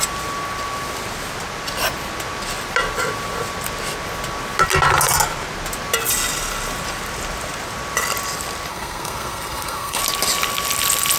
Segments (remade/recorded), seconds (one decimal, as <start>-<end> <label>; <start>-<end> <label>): 0.0-8.7 recorded; 8.7-10.0 remade; 10.0-11.2 recorded